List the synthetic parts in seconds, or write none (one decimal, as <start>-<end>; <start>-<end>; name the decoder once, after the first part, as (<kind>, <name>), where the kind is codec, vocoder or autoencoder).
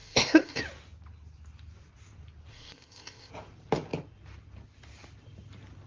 0.0-0.6 (codec, ZipCodec); 2.5-3.3